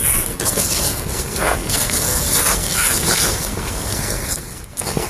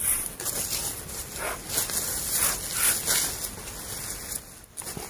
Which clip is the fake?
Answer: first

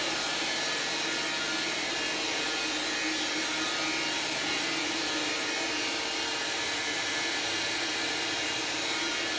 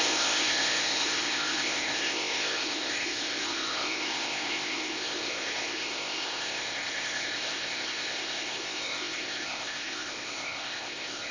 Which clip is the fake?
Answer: second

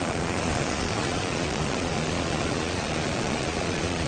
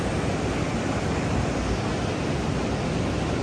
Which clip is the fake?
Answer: first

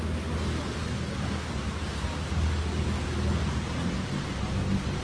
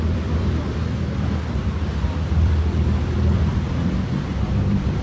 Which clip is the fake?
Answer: second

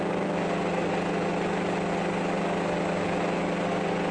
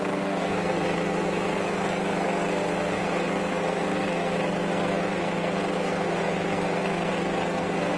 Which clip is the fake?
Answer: second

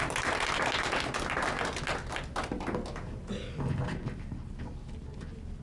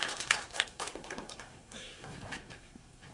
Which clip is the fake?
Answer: second